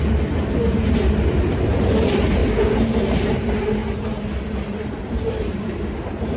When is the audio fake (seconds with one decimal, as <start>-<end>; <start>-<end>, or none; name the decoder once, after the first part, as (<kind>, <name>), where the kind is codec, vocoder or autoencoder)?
0.0-2.4 (vocoder, BigVGAN v2); 3.0-3.8; 4.8-6.4